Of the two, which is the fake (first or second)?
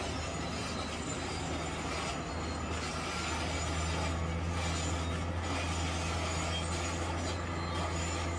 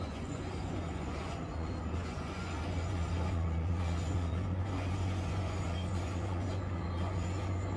second